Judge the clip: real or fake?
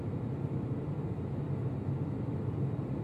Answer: real